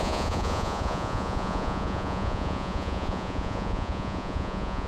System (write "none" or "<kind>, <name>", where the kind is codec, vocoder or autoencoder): vocoder, Vocos